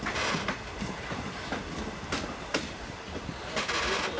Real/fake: real